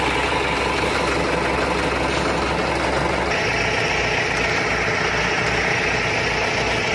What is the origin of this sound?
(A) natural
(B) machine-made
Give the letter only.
A